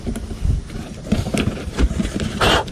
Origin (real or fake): real